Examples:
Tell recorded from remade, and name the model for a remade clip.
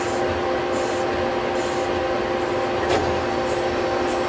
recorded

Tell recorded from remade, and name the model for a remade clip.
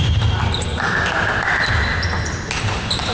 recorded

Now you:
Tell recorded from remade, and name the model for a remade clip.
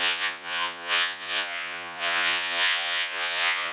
remade, vocoder, Vocos